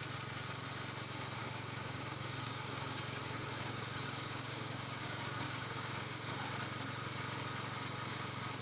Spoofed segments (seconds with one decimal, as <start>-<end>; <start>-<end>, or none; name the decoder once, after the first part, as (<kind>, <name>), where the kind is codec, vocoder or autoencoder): 1.4-6.3 (codec, DAC)